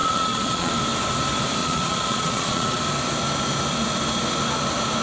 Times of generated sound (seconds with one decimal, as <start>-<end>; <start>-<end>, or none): 0.0-0.7; 1.6-2.8